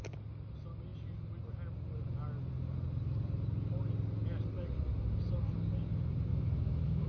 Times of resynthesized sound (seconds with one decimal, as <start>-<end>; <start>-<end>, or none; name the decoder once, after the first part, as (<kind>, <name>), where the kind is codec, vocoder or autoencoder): 6.3-7.1 (autoencoder, DAC-VAE)